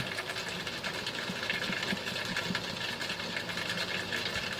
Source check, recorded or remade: recorded